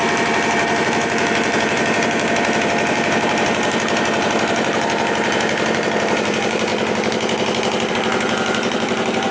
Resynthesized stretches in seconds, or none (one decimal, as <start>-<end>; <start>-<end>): 0.0-6.7; 7.9-9.3